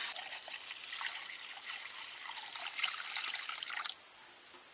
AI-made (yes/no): no